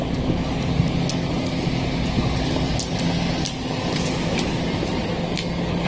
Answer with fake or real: real